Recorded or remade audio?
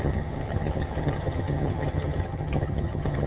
remade